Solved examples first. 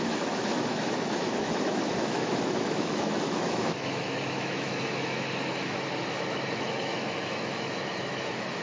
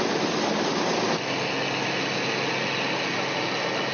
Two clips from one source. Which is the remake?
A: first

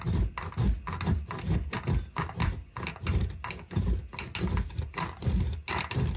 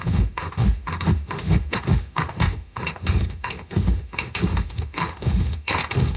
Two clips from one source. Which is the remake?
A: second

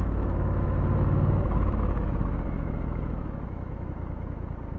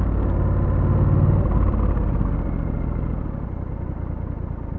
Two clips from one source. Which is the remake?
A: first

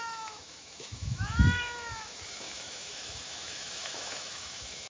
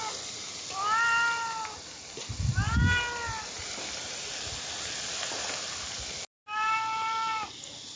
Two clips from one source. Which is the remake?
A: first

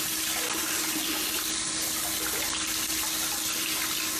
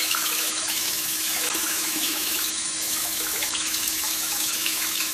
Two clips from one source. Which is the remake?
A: second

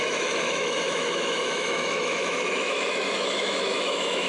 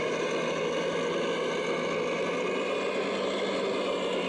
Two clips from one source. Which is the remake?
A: first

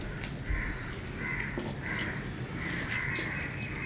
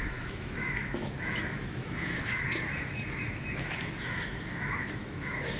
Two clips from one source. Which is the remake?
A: second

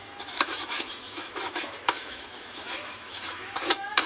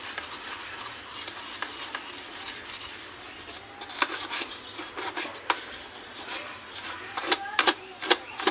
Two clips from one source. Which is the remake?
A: first